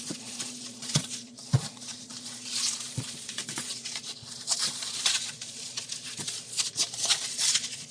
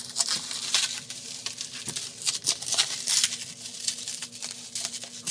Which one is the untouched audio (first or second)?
second